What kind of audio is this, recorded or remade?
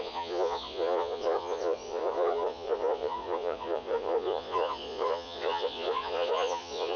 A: remade